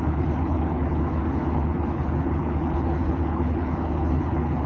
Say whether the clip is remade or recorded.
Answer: remade